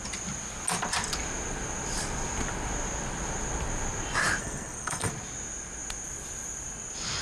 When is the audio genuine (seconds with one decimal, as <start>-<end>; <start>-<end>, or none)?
0.0-4.4; 5.1-7.2